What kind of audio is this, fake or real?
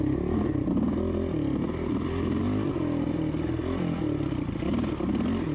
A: real